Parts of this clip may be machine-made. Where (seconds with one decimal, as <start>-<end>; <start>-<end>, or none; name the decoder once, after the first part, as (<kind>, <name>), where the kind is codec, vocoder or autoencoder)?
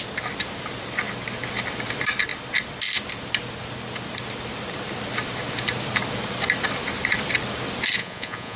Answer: 8.0-8.6 (vocoder, Vocos)